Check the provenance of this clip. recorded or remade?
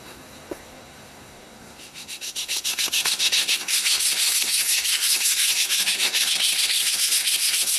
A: remade